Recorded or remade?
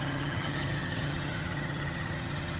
remade